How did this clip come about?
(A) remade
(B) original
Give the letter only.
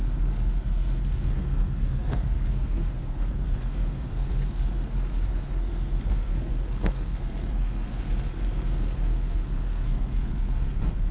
A